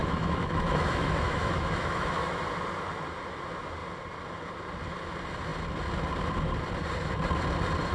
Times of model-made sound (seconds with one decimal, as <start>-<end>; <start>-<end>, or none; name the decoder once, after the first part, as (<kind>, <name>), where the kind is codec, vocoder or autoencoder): 0.0-2.4 (autoencoder, DAC-VAE)